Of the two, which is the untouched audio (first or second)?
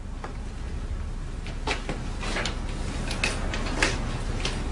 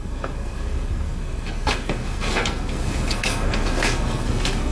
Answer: first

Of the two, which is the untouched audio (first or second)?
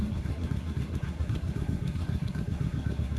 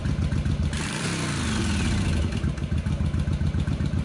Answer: second